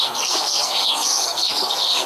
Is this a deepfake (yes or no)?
yes